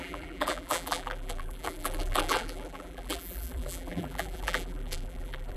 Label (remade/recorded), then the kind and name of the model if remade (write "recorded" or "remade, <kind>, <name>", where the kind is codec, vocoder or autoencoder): remade, vocoder, BigVGAN v2